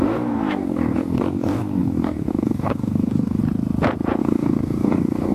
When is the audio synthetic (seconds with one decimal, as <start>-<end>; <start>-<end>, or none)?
0.0-3.4; 4.2-5.3